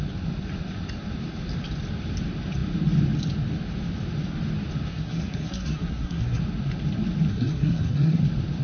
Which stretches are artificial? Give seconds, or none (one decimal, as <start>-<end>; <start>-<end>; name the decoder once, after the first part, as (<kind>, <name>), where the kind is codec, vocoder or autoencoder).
4.9-6.4 (codec, SNAC); 7.3-8.2